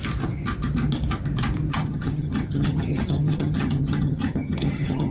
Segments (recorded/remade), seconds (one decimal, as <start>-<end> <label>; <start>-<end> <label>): 0.0-1.7 recorded; 1.7-5.1 remade